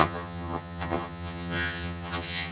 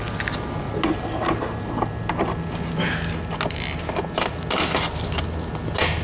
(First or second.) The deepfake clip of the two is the first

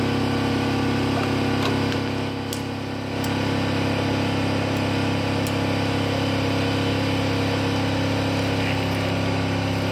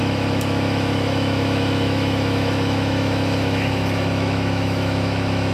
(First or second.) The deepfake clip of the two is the second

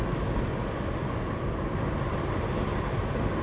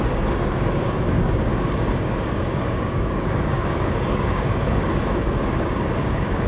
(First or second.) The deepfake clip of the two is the second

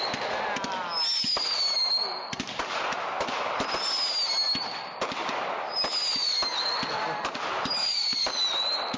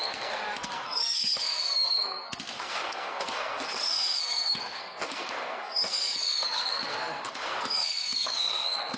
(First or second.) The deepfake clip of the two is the second